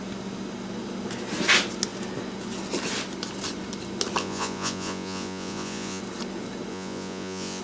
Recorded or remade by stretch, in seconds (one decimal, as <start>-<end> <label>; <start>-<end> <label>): 0.0-4.2 recorded; 4.2-6.0 remade; 6.0-6.7 recorded; 6.7-7.6 remade